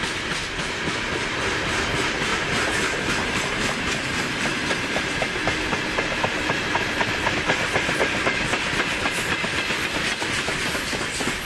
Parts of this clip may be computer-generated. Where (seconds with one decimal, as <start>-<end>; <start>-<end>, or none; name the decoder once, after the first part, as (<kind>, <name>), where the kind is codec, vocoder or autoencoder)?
2.3-7.3 (vocoder, BigVGAN v2)